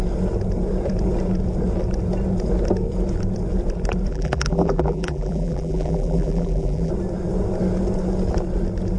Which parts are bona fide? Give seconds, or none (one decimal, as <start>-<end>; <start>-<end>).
0.0-4.1; 6.9-9.0